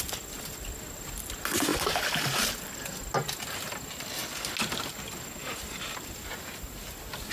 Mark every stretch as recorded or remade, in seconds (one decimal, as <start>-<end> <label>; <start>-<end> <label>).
0.0-7.3 recorded